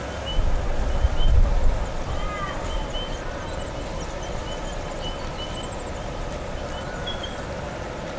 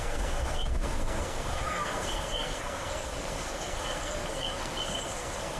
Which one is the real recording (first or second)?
first